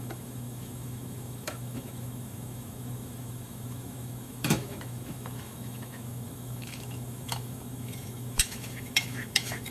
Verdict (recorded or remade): remade